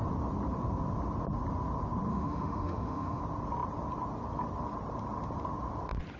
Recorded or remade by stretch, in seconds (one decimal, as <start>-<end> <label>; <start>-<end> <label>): 0.0-2.1 recorded; 2.1-3.2 remade; 3.2-6.2 recorded